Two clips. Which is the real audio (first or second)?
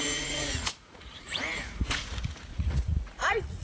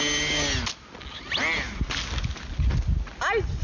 second